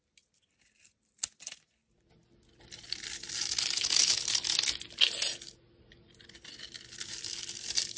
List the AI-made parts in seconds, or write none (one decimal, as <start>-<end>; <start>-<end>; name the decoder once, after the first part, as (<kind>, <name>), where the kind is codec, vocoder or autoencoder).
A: none